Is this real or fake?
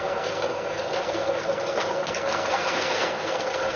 fake